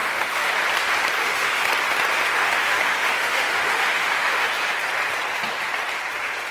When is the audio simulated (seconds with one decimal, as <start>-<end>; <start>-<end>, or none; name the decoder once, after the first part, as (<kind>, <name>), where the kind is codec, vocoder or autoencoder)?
0.0-0.5 (autoencoder, DAC-VAE); 1.2-1.7; 2.4-4.5